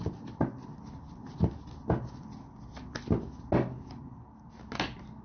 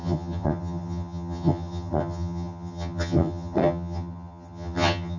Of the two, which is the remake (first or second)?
second